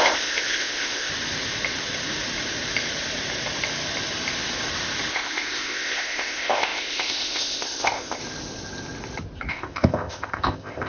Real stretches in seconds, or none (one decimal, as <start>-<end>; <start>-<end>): 1.1-5.1; 8.2-9.5